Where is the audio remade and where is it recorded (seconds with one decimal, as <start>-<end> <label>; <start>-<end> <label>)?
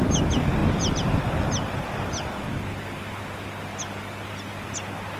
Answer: 0.0-5.2 recorded